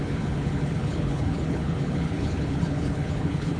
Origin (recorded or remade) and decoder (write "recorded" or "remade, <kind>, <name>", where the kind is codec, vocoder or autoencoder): remade, codec, HILCodec